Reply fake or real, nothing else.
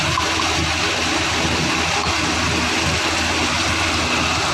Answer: real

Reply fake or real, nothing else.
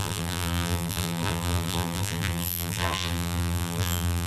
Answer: fake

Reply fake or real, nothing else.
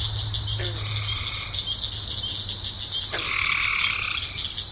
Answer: real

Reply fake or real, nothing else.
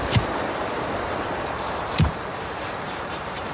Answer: fake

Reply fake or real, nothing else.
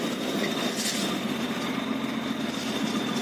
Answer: real